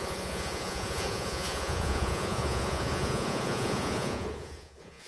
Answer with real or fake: fake